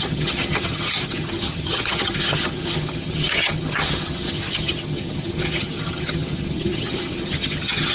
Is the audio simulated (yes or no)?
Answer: yes